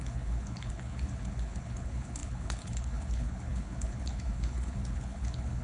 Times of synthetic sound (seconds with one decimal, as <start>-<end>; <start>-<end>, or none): 0.0-5.6